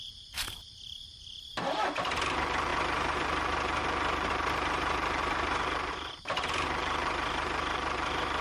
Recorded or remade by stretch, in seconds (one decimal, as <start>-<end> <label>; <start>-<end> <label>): 0.0-8.4 remade